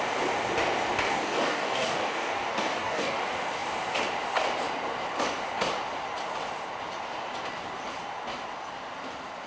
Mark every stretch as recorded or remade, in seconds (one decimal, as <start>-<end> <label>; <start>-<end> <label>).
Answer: 0.0-1.1 recorded; 1.1-3.2 remade; 3.2-9.5 recorded